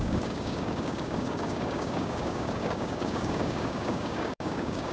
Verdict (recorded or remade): remade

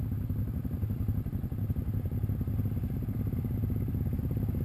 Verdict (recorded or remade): recorded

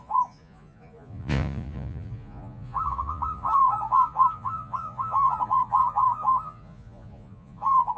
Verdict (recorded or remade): remade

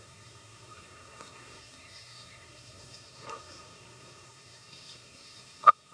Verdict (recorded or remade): remade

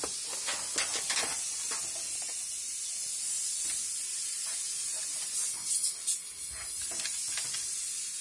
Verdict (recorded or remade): recorded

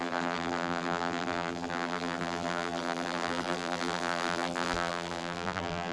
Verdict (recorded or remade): remade